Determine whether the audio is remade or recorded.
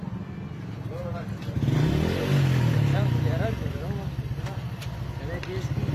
recorded